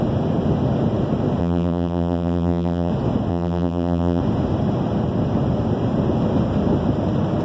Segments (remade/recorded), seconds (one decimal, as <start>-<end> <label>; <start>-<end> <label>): 0.0-1.4 recorded; 1.4-2.9 remade; 2.9-3.3 recorded; 3.3-4.2 remade; 4.2-7.4 recorded

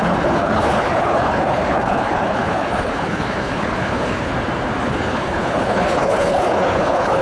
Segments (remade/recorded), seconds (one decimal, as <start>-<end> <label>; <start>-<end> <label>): 0.0-4.3 remade; 4.3-4.9 recorded; 4.9-7.2 remade

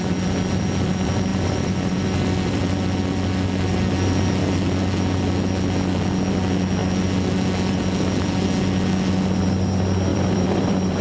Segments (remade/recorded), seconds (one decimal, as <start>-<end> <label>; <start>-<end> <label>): 0.0-1.3 recorded; 1.3-2.6 remade; 2.6-10.1 recorded; 10.1-11.0 remade

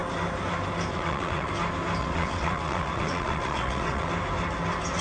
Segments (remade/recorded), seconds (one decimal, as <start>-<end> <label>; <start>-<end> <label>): 0.0-0.9 recorded; 0.9-1.5 remade; 1.5-2.0 recorded; 2.0-4.1 remade; 4.1-5.0 recorded

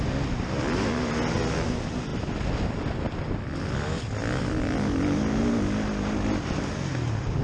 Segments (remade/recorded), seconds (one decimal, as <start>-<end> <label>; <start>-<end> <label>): 0.0-7.4 recorded